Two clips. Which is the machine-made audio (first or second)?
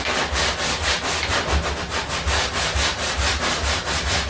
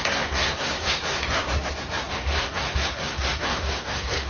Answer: second